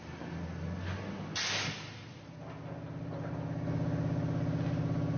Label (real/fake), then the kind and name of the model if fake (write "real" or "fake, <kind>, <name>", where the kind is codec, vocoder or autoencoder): real